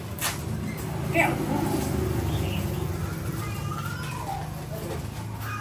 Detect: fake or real real